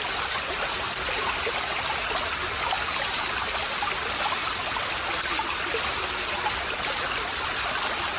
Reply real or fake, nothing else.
real